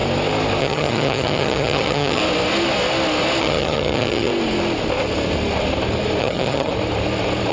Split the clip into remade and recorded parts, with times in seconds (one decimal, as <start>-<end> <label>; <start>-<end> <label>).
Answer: 0.0-0.6 recorded; 0.6-2.2 remade; 2.2-3.4 recorded; 3.4-4.3 remade; 4.3-6.2 recorded; 6.2-6.7 remade; 6.7-7.5 recorded